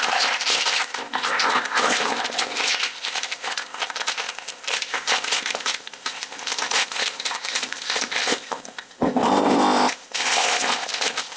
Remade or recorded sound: remade